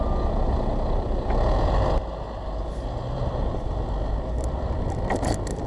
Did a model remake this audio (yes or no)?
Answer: no